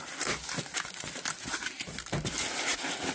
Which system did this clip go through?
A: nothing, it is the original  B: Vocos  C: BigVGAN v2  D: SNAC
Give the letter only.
A